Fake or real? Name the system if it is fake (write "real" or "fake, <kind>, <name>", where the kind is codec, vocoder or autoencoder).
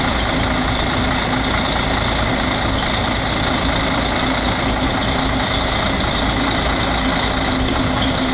real